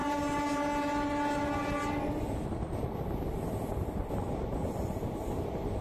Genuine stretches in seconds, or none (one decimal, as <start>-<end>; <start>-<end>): 0.0-5.8